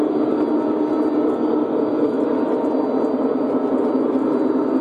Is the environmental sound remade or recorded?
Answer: recorded